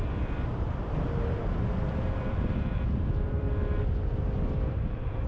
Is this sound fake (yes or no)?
yes